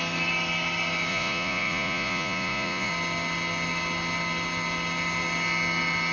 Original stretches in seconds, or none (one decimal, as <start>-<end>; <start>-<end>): 0.0-1.1; 2.9-6.1